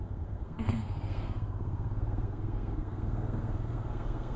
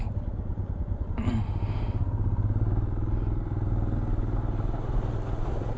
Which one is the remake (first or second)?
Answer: first